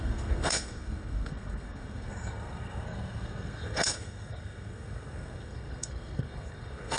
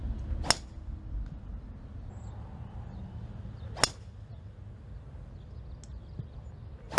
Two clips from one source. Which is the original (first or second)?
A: second